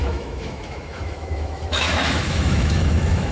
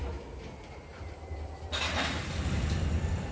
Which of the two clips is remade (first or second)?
first